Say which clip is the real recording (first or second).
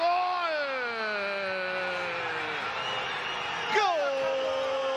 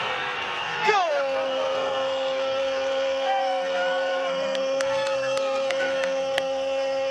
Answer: first